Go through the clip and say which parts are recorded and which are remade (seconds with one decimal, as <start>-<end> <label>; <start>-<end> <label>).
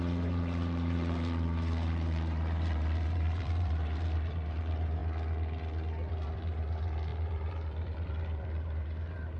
0.0-5.0 remade; 5.0-6.1 recorded; 6.1-9.4 remade